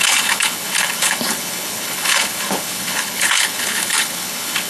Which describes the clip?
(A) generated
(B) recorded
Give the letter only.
A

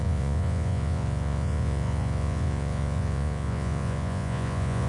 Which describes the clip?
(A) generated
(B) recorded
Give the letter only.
A